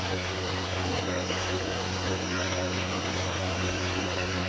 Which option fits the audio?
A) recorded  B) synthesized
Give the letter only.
B